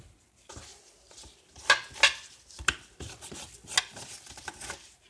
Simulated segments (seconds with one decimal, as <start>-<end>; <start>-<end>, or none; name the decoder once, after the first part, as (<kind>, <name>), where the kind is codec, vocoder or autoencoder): none